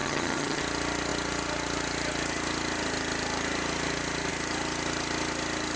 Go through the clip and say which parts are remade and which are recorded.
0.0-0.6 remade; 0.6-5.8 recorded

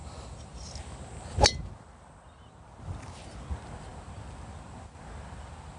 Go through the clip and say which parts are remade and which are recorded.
0.0-5.8 recorded

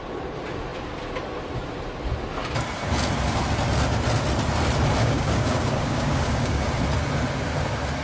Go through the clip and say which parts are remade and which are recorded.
0.0-5.0 recorded; 5.0-6.7 remade; 6.7-8.0 recorded

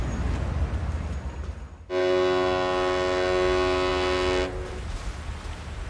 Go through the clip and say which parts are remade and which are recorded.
0.0-5.9 recorded

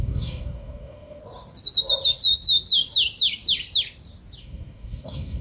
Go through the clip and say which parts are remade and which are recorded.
0.0-1.2 remade; 1.2-4.4 recorded; 4.4-5.4 remade